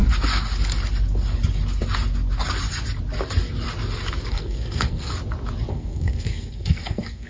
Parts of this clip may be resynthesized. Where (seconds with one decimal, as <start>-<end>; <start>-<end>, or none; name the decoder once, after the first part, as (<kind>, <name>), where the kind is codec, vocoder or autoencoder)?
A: 4.3-5.1 (codec, SNAC); 5.7-7.3

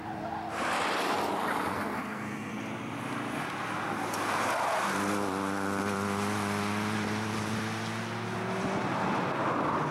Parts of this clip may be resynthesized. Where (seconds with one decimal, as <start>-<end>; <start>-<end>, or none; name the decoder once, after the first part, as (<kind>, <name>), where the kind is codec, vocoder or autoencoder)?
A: 1.7-2.6 (codec, SNAC)